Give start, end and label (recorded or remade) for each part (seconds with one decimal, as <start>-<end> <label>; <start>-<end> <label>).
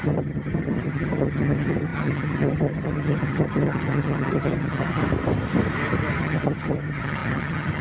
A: 0.0-5.0 remade; 5.0-6.2 recorded; 6.2-7.8 remade